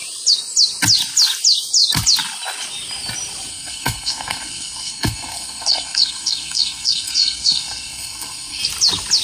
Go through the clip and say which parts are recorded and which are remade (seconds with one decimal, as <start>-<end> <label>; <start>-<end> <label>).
0.0-3.5 recorded; 3.5-8.6 remade; 8.6-9.2 recorded